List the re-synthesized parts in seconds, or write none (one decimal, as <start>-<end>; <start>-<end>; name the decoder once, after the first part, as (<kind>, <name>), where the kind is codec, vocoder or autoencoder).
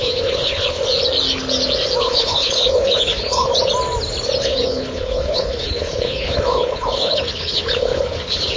0.0-0.8 (codec, HILCodec); 2.0-3.5; 4.4-8.6